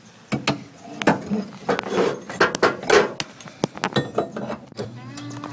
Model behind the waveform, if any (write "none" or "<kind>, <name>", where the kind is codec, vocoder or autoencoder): none